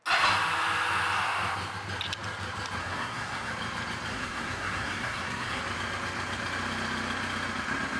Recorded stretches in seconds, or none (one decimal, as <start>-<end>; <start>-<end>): 0.0-2.8; 3.5-4.1; 5.6-8.0